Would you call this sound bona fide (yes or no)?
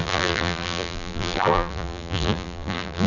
no